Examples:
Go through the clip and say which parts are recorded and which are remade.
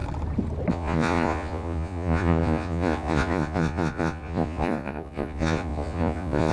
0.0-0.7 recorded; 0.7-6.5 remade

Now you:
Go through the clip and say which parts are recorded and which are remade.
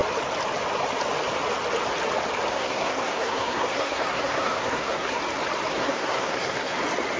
0.0-2.5 recorded; 2.5-5.2 remade; 5.2-5.7 recorded; 5.7-6.8 remade; 6.8-7.2 recorded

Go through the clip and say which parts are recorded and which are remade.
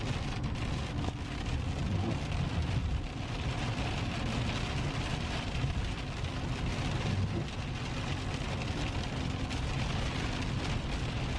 0.0-11.4 recorded